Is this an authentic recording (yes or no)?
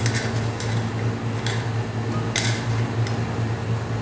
yes